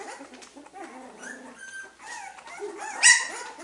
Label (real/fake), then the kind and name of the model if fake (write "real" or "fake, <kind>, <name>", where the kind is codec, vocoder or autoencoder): real